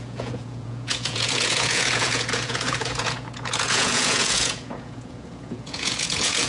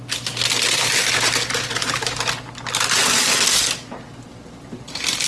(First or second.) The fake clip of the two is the first